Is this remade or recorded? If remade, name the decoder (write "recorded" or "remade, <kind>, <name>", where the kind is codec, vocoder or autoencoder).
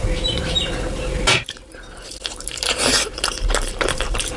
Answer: remade, vocoder, BigVGAN v2